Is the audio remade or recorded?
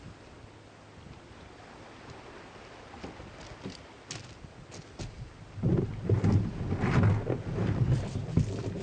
recorded